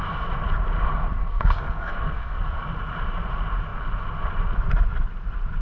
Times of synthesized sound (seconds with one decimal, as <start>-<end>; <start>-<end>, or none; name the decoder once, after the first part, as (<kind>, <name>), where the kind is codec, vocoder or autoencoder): 1.2-2.6 (codec, SNAC)

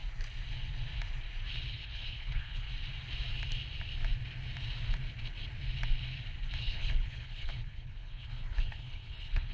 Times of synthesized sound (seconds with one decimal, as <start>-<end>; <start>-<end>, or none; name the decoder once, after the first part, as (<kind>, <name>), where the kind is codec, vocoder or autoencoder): 1.7-2.7 (codec, HILCodec); 6.6-9.5

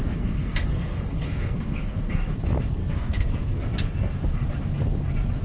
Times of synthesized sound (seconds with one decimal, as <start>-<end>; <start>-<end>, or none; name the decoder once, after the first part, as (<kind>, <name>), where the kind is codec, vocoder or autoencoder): 0.0-2.3 (codec, SNAC); 2.8-4.1

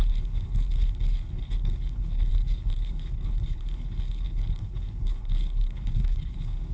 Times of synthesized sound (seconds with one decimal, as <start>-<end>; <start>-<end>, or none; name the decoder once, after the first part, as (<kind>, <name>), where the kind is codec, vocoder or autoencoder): 0.0-6.7 (codec, HILCodec)

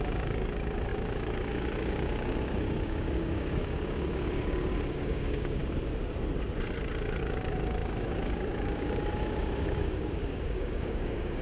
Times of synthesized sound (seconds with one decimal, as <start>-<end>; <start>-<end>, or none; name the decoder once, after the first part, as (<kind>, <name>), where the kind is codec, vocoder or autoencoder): 0.0-5.6 (codec, DAC); 7.2-11.4